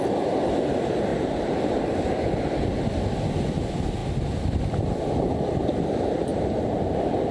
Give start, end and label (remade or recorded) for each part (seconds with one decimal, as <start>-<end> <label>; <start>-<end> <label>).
0.0-1.1 remade; 1.1-3.1 recorded; 3.1-4.0 remade; 4.0-5.2 recorded; 5.2-7.3 remade